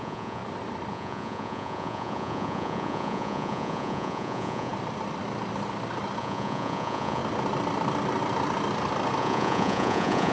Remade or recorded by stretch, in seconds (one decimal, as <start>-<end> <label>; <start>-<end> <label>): 0.0-0.4 remade; 0.4-0.9 recorded; 0.9-4.7 remade; 4.7-6.2 recorded; 6.2-7.2 remade; 7.2-9.2 recorded; 9.2-10.3 remade